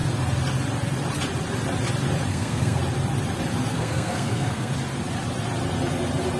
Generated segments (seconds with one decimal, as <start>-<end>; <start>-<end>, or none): 2.3-2.8; 3.7-4.7